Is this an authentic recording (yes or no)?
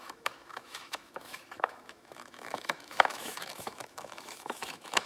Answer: no